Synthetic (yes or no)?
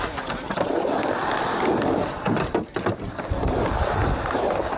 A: no